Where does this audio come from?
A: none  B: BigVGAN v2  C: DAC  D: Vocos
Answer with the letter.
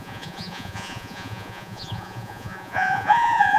D